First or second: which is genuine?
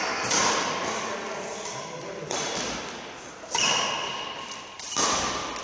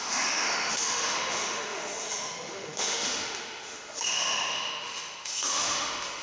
first